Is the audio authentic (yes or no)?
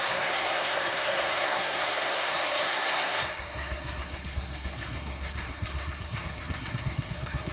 no